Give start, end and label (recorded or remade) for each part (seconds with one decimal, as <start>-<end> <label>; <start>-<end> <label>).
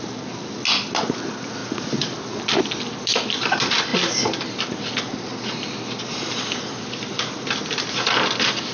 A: 0.0-8.7 recorded